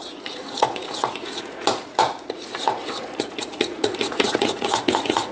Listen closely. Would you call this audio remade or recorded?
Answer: remade